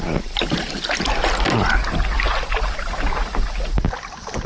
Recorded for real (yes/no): yes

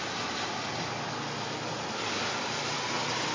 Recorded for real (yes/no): yes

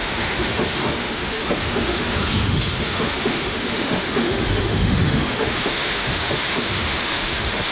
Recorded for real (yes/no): no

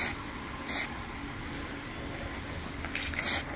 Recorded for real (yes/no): yes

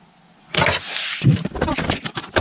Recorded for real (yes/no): yes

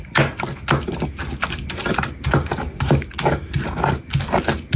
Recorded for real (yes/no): yes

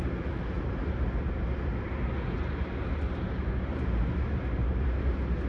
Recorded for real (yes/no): yes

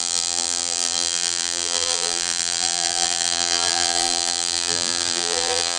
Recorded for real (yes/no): no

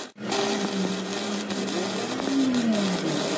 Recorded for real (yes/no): yes